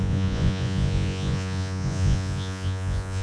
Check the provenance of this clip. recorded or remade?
remade